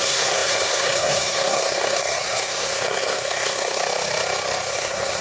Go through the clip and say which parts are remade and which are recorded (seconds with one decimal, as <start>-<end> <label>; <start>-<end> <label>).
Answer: 0.0-3.8 remade; 3.8-4.7 recorded; 4.7-5.2 remade